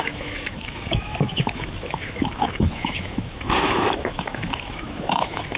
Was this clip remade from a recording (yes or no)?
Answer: yes